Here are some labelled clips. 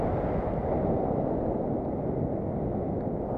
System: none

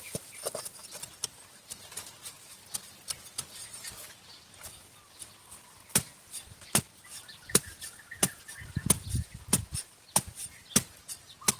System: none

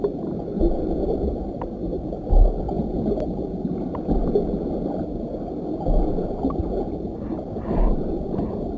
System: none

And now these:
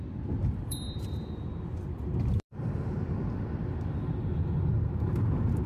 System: vocoder, BigVGAN v2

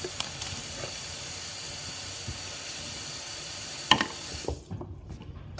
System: none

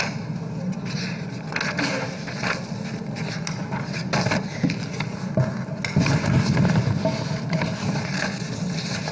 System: none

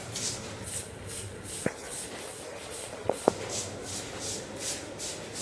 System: none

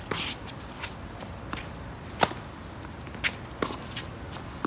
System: none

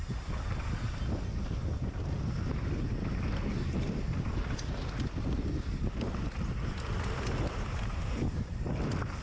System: none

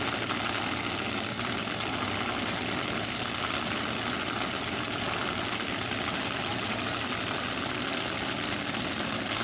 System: none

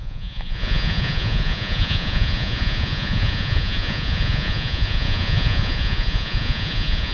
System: vocoder, Vocos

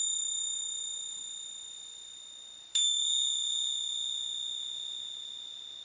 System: none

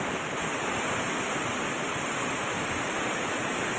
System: none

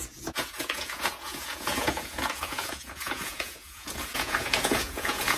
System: vocoder, Vocos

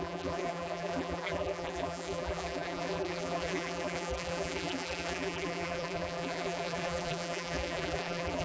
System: vocoder, BigVGAN v2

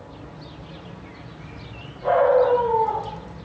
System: none